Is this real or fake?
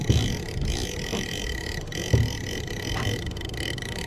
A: real